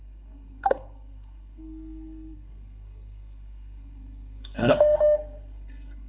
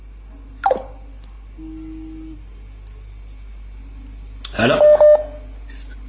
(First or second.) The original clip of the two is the second